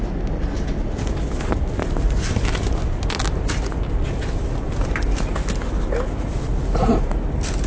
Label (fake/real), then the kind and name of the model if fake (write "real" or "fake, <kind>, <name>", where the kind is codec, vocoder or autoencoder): real